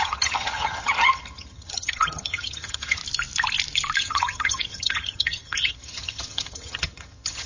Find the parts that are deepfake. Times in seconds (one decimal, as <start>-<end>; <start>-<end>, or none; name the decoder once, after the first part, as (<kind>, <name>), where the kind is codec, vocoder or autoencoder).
0.0-3.0 (vocoder, HiFi-GAN); 4.0-7.5